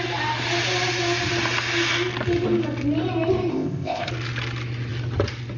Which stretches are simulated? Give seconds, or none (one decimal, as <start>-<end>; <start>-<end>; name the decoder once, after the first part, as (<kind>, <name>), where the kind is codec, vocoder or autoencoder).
3.5-4.1 (codec, ZipCodec)